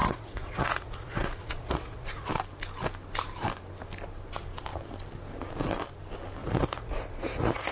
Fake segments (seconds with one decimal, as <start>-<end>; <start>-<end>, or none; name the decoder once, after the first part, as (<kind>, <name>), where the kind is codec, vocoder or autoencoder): 0.0-2.3 (vocoder, Vocos); 6.4-7.7